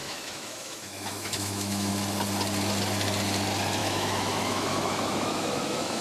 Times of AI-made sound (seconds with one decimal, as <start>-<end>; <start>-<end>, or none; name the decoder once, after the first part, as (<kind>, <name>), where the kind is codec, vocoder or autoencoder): 0.0-1.9 (autoencoder, DAC-VAE); 3.8-6.0